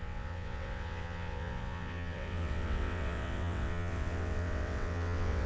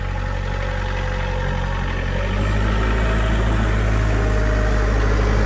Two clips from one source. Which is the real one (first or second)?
second